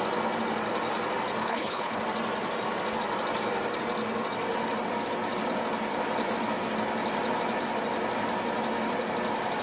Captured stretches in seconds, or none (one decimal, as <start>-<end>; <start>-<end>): 0.0-1.4; 2.0-9.6